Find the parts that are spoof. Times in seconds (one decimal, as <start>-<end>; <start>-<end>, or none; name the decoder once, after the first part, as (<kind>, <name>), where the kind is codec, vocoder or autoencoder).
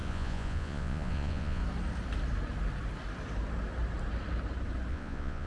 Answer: 0.0-1.6 (vocoder, Vocos); 4.9-5.5